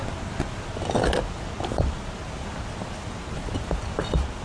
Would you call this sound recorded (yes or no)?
yes